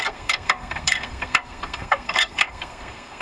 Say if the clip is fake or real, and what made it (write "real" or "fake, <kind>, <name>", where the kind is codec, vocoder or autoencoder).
fake, codec, SNAC